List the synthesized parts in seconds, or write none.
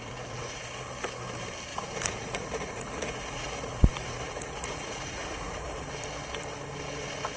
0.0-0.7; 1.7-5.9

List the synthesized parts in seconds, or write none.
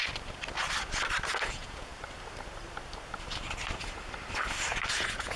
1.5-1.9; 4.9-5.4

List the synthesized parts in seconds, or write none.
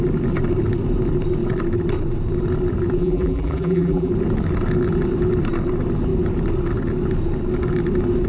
3.0-4.1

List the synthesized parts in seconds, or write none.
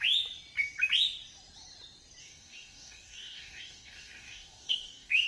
2.2-5.3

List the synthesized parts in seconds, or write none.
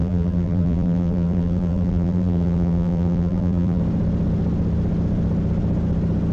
0.0-3.8